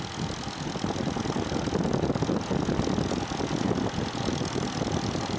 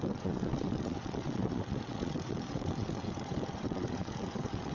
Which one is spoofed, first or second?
second